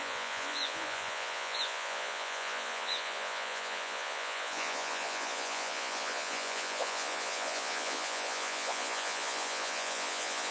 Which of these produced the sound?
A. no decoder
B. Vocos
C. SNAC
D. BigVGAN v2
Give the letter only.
B